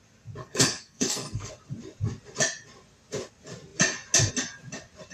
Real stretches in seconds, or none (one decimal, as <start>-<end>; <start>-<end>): 0.0-0.4; 1.5-5.1